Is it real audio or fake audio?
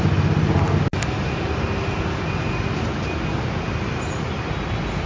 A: real